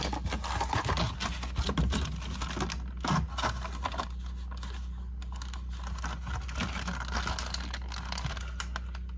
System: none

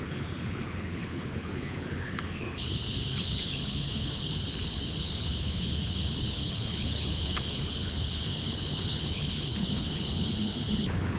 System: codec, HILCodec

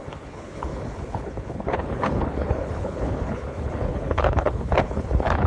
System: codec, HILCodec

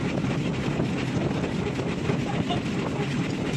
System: none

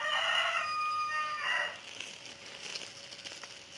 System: none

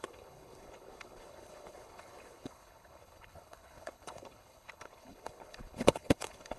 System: codec, HILCodec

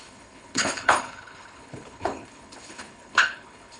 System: codec, HILCodec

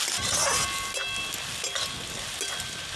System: none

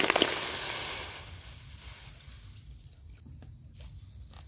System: none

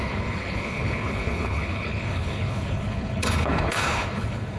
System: codec, HILCodec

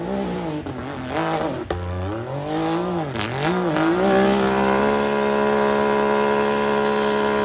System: none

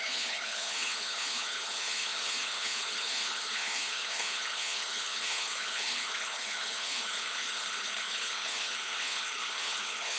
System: codec, HILCodec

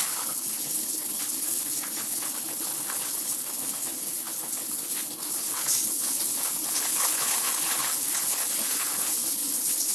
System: codec, HILCodec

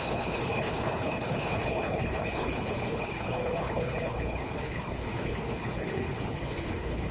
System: codec, HILCodec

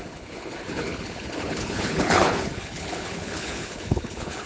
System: codec, HILCodec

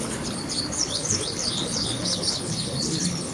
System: codec, HILCodec